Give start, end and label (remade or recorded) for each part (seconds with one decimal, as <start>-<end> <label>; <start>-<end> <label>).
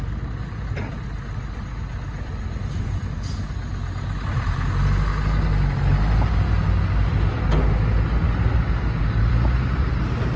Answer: 0.0-10.4 recorded